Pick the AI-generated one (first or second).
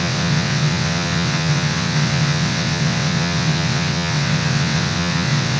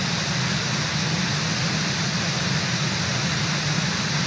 first